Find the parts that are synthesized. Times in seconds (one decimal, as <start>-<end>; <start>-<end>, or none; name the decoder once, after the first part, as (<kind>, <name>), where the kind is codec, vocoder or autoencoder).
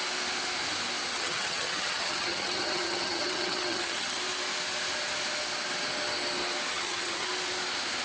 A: 1.1-4.2 (vocoder, HiFi-GAN); 6.7-7.3